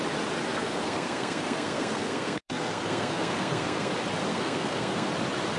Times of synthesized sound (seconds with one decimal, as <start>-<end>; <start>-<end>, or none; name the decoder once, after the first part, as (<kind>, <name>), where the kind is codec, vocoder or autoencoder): 0.5-3.9 (codec, SNAC); 4.3-5.1

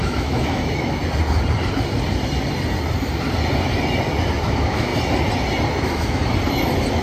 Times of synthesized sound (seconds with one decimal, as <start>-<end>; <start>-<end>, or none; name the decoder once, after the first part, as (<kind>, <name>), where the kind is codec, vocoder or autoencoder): 0.0-1.0 (autoencoder, DAC-VAE); 4.5-4.9; 5.8-6.2

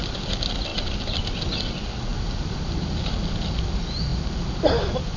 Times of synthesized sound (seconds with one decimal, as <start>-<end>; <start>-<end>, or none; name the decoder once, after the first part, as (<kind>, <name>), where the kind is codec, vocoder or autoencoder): 0.7-1.6 (vocoder, BigVGAN v2); 2.1-3.6

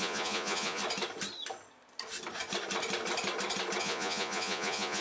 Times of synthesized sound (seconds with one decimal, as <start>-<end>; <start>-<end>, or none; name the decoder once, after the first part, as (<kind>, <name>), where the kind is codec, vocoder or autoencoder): 0.0-0.8 (vocoder, Vocos); 3.8-5.0

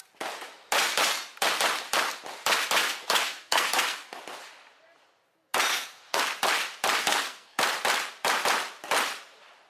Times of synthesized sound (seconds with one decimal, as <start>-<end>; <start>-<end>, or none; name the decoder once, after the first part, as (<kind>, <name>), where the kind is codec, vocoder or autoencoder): 2.8-4.2 (codec, SNAC); 5.7-6.2; 7.0-7.6

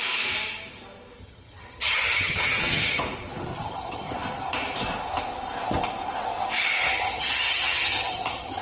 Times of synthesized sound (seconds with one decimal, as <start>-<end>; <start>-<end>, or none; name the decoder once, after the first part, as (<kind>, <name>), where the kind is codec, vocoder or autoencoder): 1.2-3.0 (vocoder, HiFi-GAN); 3.5-4.1; 6.8-8.6

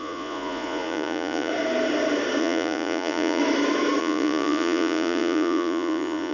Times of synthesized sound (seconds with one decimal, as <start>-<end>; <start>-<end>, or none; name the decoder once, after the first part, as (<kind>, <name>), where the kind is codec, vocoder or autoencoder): 0.0-1.5 (vocoder, Vocos); 2.4-3.4; 4.0-6.3